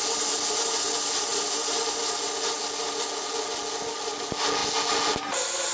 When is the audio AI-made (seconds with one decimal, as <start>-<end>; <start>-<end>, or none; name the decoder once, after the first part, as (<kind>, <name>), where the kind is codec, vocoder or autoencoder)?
none